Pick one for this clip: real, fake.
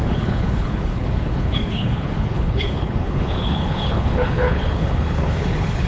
fake